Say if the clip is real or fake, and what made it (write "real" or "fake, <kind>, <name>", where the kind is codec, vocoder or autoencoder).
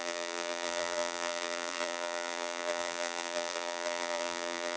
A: fake, vocoder, BigVGAN v2